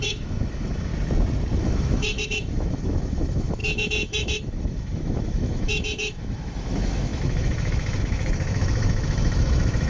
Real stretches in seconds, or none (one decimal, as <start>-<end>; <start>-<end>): 0.9-1.6